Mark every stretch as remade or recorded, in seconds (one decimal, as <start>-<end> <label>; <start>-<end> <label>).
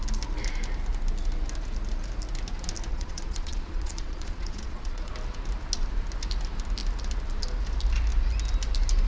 0.0-2.9 recorded; 2.9-5.1 remade; 5.1-9.1 recorded